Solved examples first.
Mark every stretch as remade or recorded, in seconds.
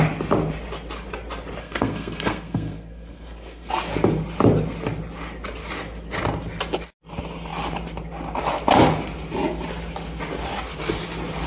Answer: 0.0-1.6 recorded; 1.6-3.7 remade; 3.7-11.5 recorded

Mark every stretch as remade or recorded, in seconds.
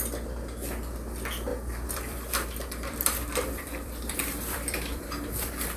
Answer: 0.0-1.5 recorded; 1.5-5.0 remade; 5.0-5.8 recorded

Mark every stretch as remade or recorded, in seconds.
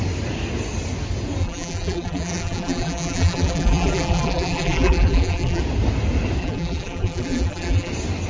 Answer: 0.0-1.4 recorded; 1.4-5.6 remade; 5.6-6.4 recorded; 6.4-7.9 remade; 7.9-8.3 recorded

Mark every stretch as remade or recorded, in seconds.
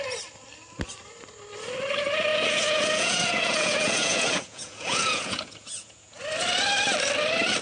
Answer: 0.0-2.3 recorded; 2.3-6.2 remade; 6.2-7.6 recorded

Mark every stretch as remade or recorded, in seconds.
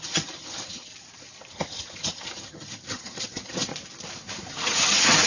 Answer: 0.0-0.9 remade; 0.9-1.5 recorded; 1.5-3.7 remade; 3.7-4.5 recorded; 4.5-5.3 remade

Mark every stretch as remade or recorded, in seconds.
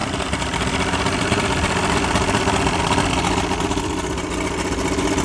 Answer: 0.0-2.8 remade; 2.8-5.2 recorded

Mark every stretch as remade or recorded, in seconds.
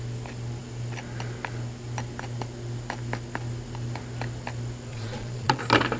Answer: 0.0-4.9 recorded; 4.9-5.6 remade; 5.6-6.0 recorded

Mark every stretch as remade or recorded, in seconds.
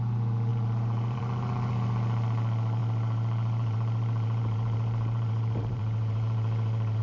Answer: 0.0-0.5 recorded; 0.5-1.2 remade; 1.2-2.8 recorded; 2.8-7.0 remade